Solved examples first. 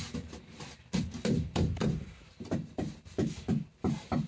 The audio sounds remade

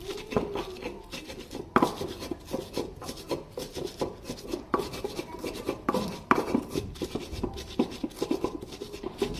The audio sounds recorded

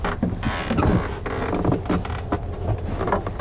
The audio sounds recorded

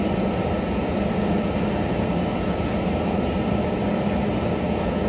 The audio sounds remade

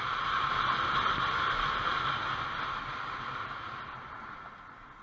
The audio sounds recorded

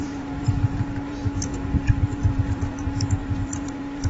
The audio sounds remade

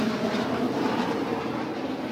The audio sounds remade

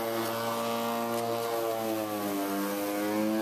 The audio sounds recorded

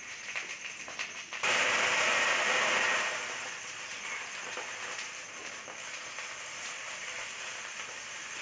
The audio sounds remade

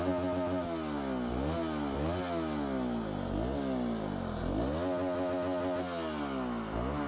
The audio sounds recorded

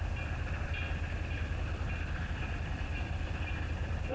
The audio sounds recorded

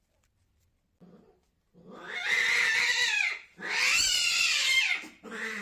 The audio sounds remade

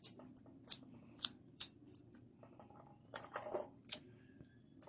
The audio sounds remade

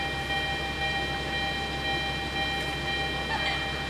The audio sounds recorded